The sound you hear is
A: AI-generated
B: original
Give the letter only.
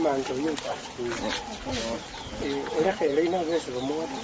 B